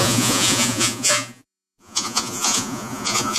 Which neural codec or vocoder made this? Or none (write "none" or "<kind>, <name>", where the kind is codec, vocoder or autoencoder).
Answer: vocoder, Vocos